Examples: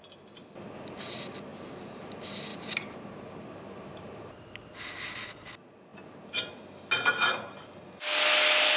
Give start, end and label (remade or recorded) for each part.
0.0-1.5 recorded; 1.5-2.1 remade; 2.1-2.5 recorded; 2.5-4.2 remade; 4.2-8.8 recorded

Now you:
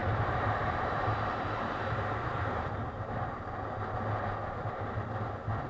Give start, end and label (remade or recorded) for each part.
0.0-3.4 remade; 3.4-5.7 recorded